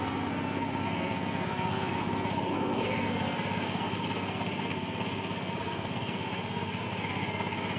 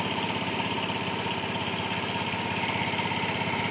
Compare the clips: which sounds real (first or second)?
second